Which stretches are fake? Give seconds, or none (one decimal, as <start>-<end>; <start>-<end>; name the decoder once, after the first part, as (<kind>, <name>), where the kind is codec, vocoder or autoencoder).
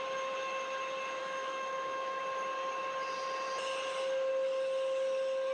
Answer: 1.2-2.2 (autoencoder, DAC-VAE)